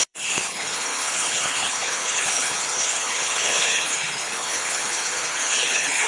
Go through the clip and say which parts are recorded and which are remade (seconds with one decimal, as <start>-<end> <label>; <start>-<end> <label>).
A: 0.0-6.1 remade